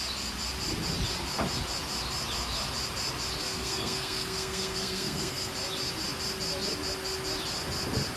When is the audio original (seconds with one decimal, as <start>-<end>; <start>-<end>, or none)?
0.0-3.4; 5.5-8.2